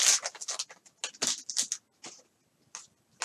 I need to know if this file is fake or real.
real